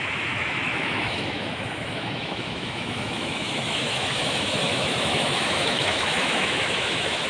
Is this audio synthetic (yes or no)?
yes